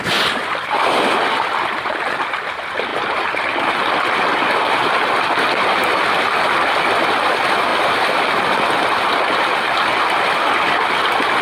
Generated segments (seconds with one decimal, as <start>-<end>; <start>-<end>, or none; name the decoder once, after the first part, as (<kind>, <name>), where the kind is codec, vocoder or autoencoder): none